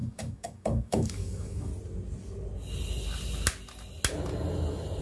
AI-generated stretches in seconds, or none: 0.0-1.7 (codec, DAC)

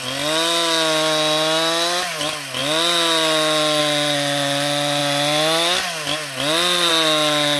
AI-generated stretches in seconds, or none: none

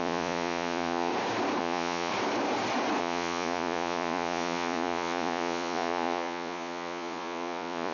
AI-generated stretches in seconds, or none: 0.0-1.1 (vocoder, Vocos); 1.6-2.1; 3.0-7.9

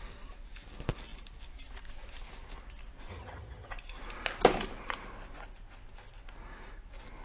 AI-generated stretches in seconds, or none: 3.1-3.7 (vocoder, HiFi-GAN)

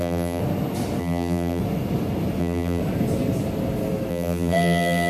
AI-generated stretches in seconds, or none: 0.0-0.4 (vocoder, BigVGAN v2); 1.0-1.6; 2.4-2.8; 4.1-5.1

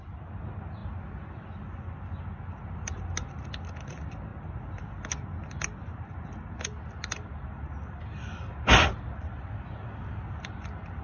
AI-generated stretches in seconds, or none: none